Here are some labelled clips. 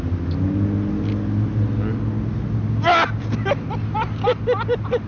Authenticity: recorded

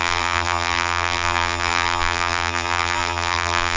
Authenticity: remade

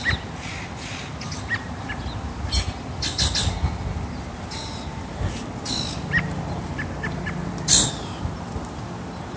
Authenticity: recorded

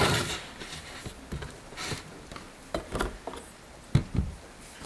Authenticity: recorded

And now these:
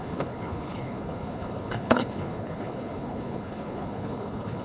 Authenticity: remade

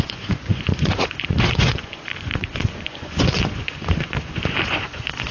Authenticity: remade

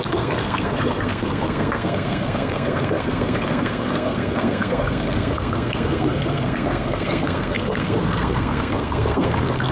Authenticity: remade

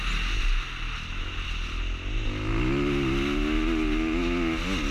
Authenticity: recorded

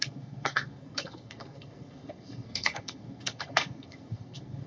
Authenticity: remade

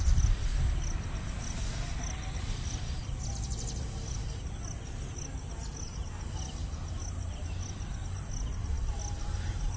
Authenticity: recorded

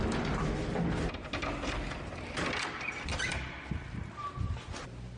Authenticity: recorded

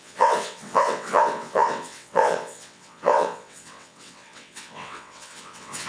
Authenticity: remade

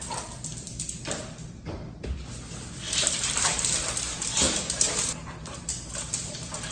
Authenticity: recorded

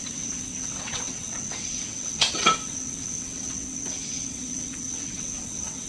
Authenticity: remade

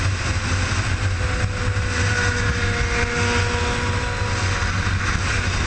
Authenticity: recorded